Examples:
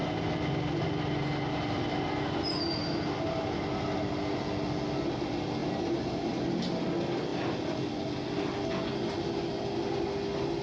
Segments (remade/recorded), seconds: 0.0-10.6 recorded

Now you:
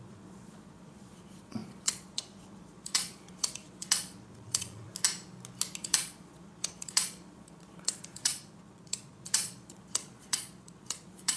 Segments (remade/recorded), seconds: 0.0-4.9 remade; 4.9-5.8 recorded; 5.8-11.4 remade

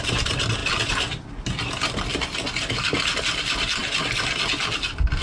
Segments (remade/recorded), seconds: 0.0-5.2 recorded

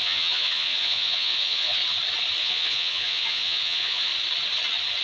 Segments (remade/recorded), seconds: 0.0-1.8 remade; 1.8-2.4 recorded; 2.4-4.1 remade; 4.1-5.0 recorded